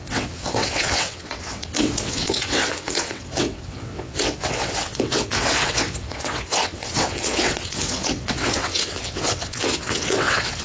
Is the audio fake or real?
fake